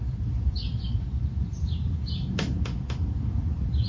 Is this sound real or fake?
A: fake